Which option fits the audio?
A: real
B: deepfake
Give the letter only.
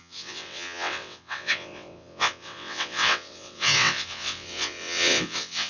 B